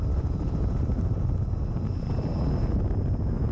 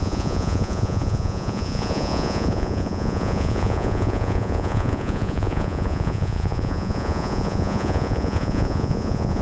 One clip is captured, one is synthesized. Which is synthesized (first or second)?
second